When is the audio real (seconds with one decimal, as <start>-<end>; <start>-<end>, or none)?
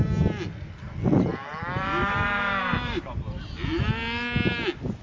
0.0-1.3; 3.8-5.0